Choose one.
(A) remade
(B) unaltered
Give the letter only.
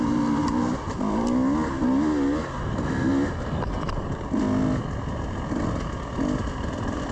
B